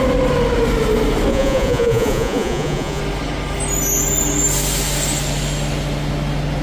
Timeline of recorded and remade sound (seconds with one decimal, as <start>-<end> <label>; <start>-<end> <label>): 0.0-1.3 recorded; 1.3-3.0 remade; 3.0-6.6 recorded